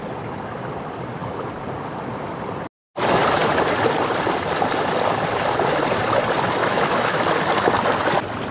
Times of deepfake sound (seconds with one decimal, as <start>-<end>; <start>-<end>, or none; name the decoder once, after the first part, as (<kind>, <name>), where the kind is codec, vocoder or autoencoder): 6.6-7.2 (autoencoder, DAC-VAE)